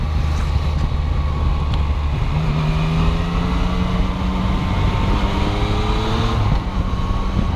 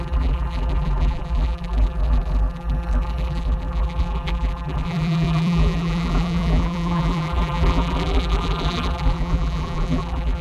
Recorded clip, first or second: first